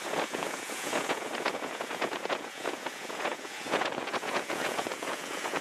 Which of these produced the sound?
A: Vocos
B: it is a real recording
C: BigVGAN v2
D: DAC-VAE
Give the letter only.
A